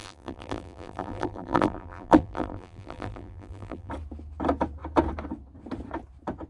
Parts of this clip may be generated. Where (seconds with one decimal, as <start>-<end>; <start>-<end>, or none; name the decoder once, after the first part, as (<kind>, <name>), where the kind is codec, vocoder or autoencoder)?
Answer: 0.0-3.9 (vocoder, BigVGAN v2)